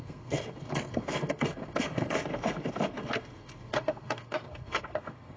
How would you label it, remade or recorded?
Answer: remade